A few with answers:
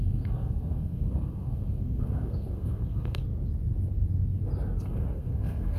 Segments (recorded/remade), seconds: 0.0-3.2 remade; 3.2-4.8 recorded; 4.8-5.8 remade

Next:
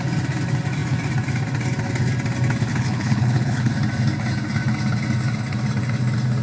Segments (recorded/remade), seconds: 0.0-2.7 recorded; 2.7-3.7 remade; 3.7-6.4 recorded